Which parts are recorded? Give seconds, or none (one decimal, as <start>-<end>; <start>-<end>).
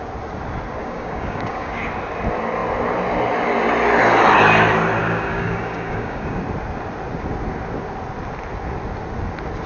0.0-0.8; 1.8-5.0; 6.4-9.7